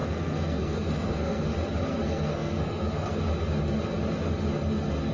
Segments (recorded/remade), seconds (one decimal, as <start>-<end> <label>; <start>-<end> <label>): 0.0-1.5 remade; 1.5-1.9 recorded; 1.9-3.2 remade; 3.2-5.1 recorded